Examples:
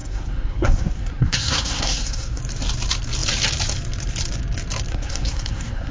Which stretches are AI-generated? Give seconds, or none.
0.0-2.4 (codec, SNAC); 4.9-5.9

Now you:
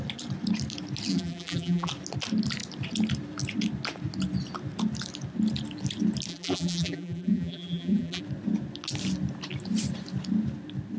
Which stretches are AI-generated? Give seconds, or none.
1.1-1.9 (vocoder, BigVGAN v2); 6.3-8.2

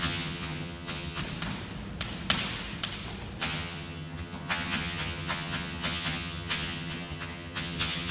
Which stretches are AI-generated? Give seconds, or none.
0.0-1.2 (vocoder, HiFi-GAN); 3.4-8.1

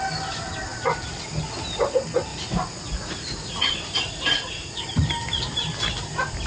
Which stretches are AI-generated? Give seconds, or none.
2.3-5.1 (vocoder, Vocos)

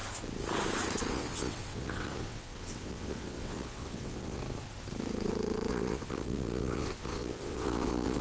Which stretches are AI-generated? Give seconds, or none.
1.1-4.4 (vocoder, WaveNeXt); 5.7-8.2